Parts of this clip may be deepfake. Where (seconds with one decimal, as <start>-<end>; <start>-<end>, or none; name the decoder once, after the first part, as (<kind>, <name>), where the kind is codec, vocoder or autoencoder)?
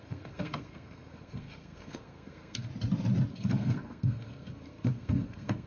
0.0-2.7 (codec, SNAC); 3.3-5.7